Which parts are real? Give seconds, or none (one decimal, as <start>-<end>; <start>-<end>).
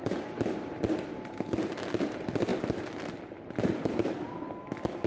0.0-5.1